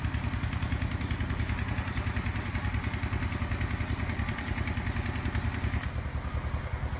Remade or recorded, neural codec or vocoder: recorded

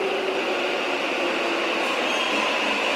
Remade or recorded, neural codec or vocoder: recorded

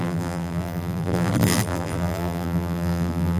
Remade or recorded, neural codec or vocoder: remade, vocoder, BigVGAN v2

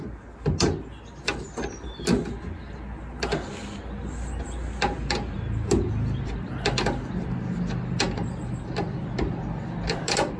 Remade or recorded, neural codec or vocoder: recorded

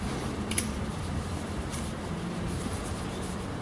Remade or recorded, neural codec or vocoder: remade, vocoder, BigVGAN v2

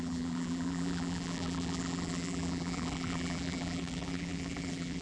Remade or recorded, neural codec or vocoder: remade, vocoder, BigVGAN v2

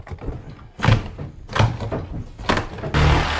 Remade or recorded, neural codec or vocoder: recorded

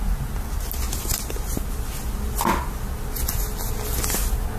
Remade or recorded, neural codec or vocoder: recorded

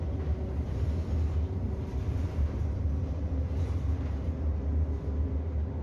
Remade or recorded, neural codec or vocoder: recorded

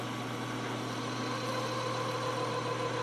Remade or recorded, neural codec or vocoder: recorded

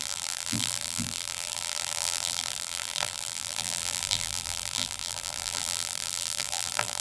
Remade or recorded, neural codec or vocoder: remade, vocoder, BigVGAN v2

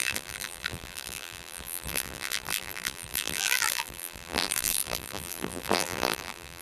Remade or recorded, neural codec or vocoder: remade, vocoder, BigVGAN v2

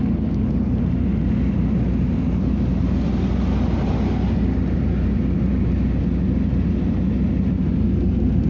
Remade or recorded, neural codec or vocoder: recorded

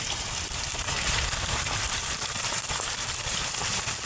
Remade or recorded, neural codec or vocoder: remade, vocoder, BigVGAN v2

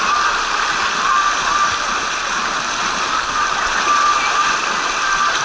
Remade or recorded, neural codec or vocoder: recorded